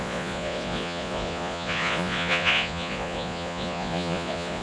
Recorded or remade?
remade